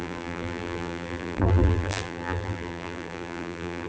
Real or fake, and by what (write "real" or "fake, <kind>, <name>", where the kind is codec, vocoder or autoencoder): fake, vocoder, BigVGAN v2